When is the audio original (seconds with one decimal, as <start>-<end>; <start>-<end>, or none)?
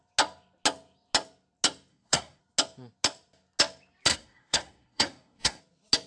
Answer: 0.0-1.9; 2.4-4.1; 5.6-6.1